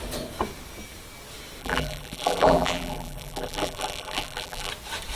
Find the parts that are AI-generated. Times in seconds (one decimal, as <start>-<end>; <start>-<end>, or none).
1.6-4.7

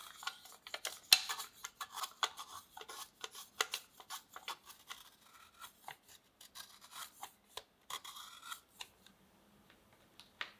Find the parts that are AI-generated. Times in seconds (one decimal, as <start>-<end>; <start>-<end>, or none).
none

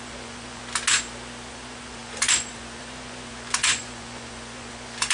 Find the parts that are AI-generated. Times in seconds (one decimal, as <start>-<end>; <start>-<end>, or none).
0.0-0.6; 1.5-5.1